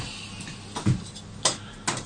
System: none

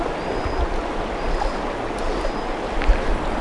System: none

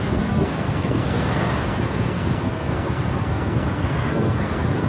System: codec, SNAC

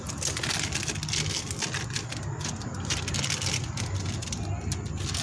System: none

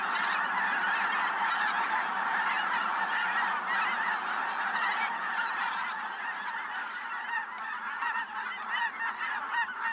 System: vocoder, BigVGAN v2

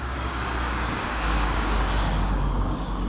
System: codec, DAC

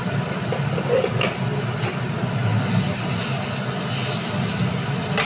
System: none